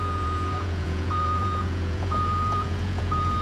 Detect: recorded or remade remade